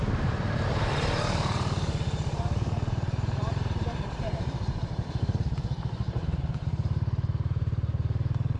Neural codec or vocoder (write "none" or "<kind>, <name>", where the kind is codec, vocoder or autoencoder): vocoder, BigVGAN v2